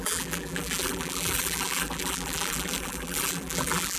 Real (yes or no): no